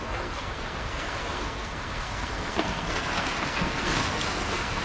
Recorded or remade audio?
remade